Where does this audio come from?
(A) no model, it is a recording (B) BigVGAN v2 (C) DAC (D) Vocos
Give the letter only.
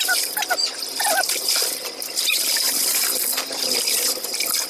A